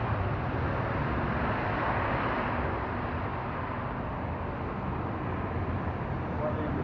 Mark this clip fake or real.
real